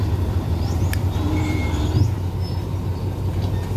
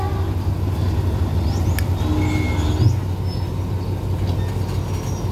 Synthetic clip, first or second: first